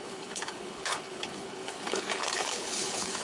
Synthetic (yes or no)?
yes